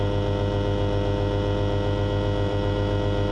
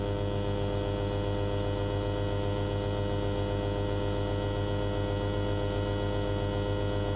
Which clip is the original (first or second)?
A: second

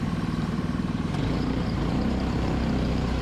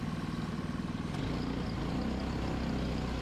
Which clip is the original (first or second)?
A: second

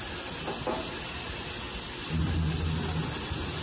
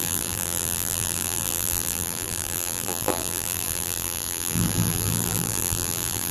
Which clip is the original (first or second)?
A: first